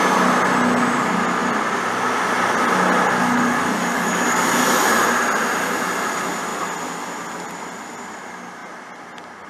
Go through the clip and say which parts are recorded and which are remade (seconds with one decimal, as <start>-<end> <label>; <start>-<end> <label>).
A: 0.0-3.2 recorded; 3.2-4.4 remade; 4.4-9.5 recorded